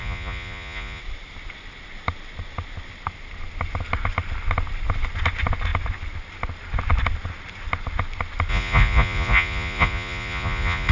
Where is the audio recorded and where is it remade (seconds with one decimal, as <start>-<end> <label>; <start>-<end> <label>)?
0.0-1.0 remade; 1.0-8.5 recorded; 8.5-10.9 remade